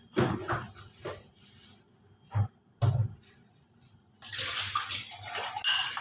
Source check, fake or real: real